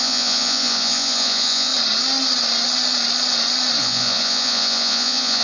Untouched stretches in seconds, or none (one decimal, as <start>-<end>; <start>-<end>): 1.7-3.8